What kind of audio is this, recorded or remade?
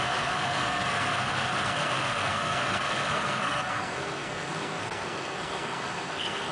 remade